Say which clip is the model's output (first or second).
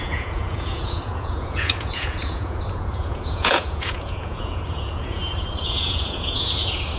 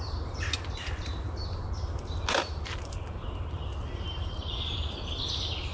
first